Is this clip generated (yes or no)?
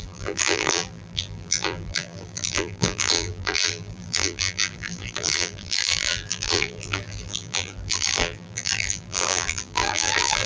yes